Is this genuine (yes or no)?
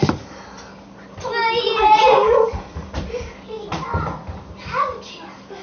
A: yes